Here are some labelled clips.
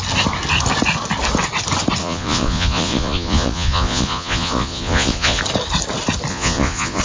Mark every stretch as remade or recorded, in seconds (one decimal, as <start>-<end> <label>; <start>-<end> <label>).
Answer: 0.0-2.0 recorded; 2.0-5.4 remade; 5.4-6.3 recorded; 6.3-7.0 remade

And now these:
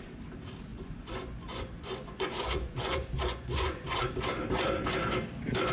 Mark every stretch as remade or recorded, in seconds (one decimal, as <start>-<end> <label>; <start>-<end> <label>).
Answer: 0.0-0.7 recorded; 0.7-4.0 remade; 4.0-5.7 recorded

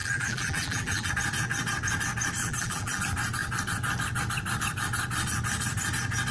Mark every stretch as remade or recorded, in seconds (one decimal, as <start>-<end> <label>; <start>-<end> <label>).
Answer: 0.0-1.1 remade; 1.1-2.4 recorded; 2.4-3.0 remade; 3.0-6.3 recorded